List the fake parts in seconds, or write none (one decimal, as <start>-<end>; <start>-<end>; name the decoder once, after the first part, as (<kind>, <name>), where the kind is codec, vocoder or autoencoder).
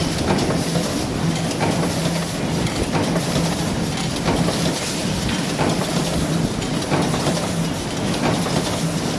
5.0-7.5 (vocoder, BigVGAN v2)